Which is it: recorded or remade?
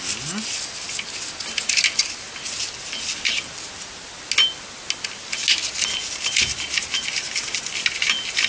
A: recorded